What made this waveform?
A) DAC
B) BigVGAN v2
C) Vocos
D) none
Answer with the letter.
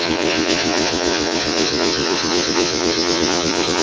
C